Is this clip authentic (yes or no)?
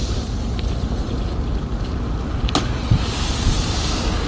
yes